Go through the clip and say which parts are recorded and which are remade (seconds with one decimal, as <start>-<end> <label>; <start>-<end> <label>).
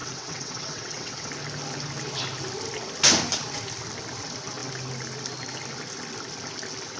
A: 0.0-1.3 remade; 1.3-7.0 recorded